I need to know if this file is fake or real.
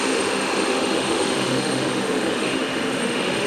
fake